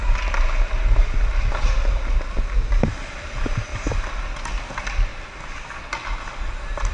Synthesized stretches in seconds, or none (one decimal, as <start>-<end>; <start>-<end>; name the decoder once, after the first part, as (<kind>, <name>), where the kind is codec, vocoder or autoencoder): none